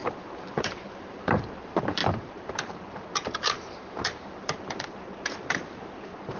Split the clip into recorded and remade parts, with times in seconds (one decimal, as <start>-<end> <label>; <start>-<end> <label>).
0.0-0.7 recorded; 0.7-6.4 remade